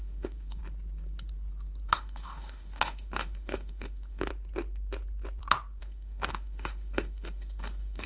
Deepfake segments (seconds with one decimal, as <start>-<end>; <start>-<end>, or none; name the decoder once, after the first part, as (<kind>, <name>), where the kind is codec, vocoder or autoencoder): 0.0-0.6 (autoencoder, DAC-VAE); 1.9-4.3; 5.8-8.1